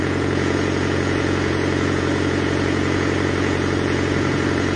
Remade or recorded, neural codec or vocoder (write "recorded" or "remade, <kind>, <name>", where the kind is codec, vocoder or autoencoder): remade, vocoder, Vocos